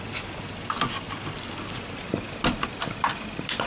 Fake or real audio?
real